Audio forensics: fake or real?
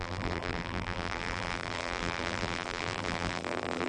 fake